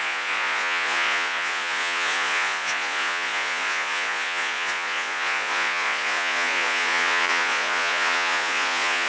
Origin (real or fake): fake